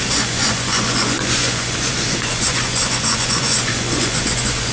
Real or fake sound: fake